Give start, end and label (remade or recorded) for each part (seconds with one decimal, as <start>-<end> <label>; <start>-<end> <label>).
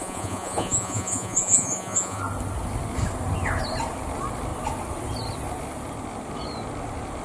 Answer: 0.0-2.2 remade; 2.2-7.2 recorded